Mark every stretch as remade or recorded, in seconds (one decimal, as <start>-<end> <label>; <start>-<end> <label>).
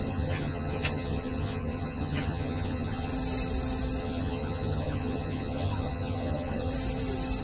0.0-3.1 remade; 3.1-4.0 recorded; 4.0-6.7 remade; 6.7-7.4 recorded